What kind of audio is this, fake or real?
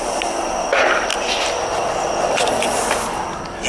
real